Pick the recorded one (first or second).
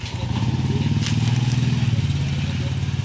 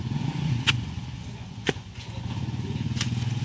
first